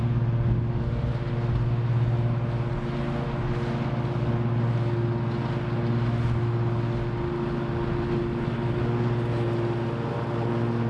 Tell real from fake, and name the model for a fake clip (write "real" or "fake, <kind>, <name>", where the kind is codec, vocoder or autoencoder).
real